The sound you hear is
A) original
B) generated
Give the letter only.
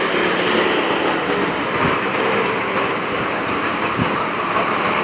A